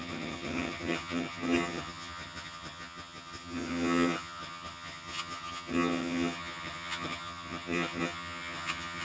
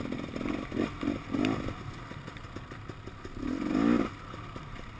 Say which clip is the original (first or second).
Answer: second